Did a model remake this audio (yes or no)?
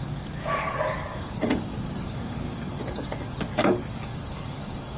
yes